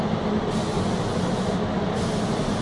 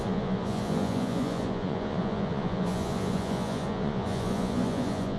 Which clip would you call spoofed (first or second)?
second